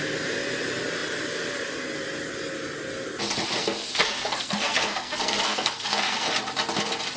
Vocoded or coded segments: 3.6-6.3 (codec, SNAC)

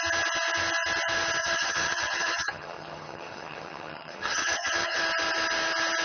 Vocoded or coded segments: 1.4-5.0 (vocoder, HiFi-GAN)

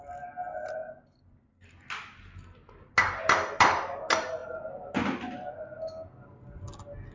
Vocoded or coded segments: none

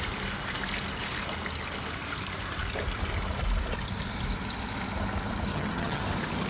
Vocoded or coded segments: 5.5-6.0 (vocoder, HiFi-GAN)

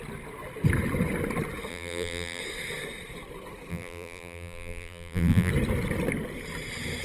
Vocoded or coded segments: 1.7-2.4 (vocoder, BigVGAN v2); 3.7-5.5